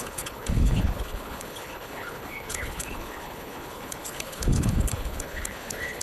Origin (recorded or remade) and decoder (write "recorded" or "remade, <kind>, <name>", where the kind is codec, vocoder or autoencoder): remade, codec, HILCodec